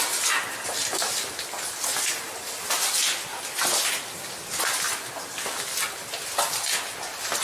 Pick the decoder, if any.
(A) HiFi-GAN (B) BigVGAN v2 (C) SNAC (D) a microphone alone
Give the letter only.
D